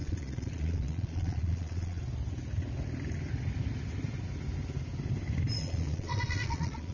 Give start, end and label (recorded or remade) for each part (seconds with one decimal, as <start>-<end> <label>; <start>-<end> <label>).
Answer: 0.0-2.0 remade; 2.0-5.5 recorded; 5.5-6.9 remade